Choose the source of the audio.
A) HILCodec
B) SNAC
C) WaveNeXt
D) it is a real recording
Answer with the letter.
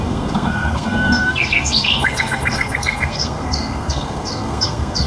B